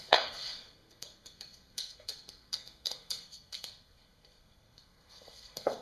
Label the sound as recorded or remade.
remade